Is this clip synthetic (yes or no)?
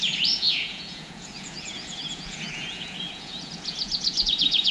yes